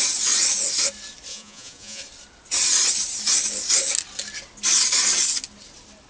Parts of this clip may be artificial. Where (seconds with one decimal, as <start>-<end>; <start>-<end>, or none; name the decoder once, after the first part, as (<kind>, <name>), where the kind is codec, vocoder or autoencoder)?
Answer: 1.3-2.0 (vocoder, Vocos)

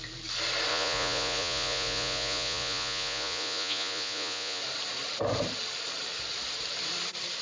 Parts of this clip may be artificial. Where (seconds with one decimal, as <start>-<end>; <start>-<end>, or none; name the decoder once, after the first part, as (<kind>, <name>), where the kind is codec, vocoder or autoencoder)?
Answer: 0.7-4.6 (vocoder, Vocos)

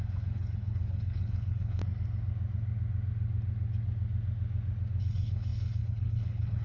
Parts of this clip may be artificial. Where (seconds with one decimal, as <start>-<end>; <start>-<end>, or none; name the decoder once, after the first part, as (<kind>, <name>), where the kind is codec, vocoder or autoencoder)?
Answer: 0.0-1.8 (codec, HILCodec); 5.0-6.6

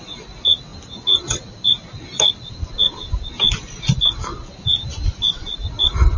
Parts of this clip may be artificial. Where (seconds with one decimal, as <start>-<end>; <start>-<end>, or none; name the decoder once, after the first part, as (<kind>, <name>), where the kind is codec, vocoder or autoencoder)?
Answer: none

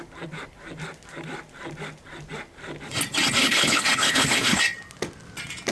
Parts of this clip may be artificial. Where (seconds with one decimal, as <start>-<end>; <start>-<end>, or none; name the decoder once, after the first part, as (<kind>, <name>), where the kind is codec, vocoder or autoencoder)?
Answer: 3.4-4.6 (codec, HILCodec)

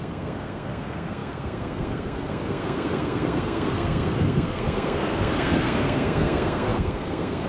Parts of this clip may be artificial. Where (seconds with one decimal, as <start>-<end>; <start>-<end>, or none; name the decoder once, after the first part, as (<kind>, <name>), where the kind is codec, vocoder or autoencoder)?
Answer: 0.0-7.5 (codec, SNAC)

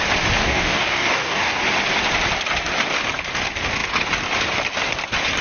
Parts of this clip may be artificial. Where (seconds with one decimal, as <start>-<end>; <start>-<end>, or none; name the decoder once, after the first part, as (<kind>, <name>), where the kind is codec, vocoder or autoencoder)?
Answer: 0.4-1.6 (codec, DAC)